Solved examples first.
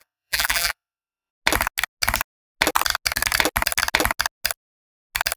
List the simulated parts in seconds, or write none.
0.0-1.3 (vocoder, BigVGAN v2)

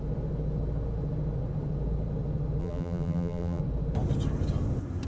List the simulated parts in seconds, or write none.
2.6-3.6 (vocoder, BigVGAN v2)

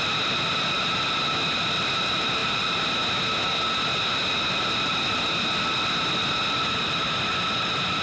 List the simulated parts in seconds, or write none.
2.4-2.9 (vocoder, BigVGAN v2)